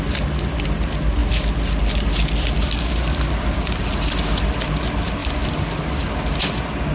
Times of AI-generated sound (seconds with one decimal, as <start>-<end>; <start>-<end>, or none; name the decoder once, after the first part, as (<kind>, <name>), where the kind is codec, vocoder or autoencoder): none